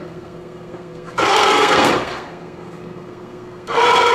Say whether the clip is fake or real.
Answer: fake